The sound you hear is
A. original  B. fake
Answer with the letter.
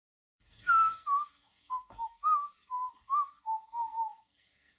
B